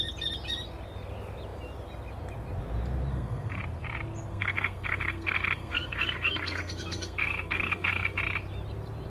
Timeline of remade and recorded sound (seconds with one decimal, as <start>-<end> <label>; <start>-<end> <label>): 0.0-3.1 recorded; 3.1-3.6 remade; 3.6-4.3 recorded; 4.3-8.2 remade; 8.2-9.1 recorded